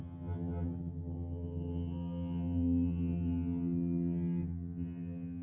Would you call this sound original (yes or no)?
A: no